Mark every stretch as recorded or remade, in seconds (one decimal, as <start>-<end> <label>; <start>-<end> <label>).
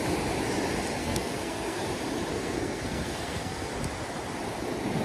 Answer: 0.0-1.0 recorded; 1.0-1.8 remade; 1.8-2.3 recorded; 2.3-3.7 remade; 3.7-5.0 recorded